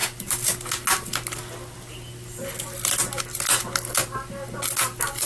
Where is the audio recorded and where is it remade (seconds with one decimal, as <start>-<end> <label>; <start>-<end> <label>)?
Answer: 0.0-5.3 recorded